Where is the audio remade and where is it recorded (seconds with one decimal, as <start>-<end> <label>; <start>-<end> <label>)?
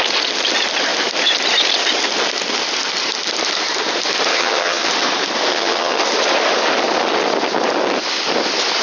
0.0-4.3 recorded; 4.3-4.9 remade; 4.9-5.5 recorded; 5.5-6.0 remade; 6.0-8.8 recorded